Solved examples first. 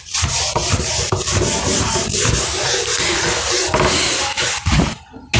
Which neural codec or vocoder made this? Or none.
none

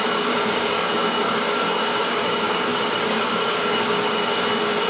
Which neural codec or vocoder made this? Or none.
codec, DAC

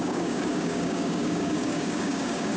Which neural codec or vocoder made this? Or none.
codec, DAC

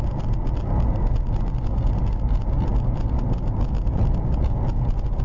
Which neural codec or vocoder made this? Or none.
none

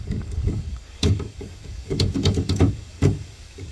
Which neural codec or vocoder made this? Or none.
codec, DAC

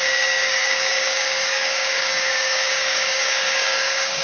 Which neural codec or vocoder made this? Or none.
codec, DAC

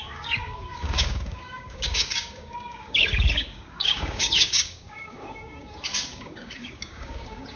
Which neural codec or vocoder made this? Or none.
codec, DAC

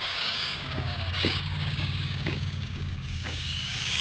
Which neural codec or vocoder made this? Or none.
codec, DAC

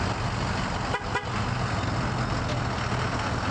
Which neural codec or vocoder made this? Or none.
none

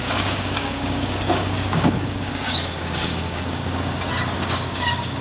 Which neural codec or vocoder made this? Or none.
codec, DAC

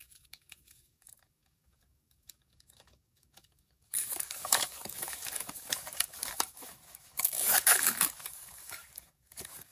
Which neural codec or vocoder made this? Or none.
codec, DAC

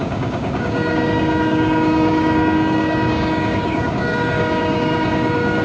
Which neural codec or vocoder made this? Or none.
codec, DAC